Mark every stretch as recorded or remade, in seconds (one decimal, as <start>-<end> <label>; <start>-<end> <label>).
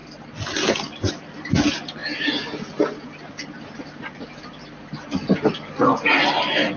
0.0-6.8 recorded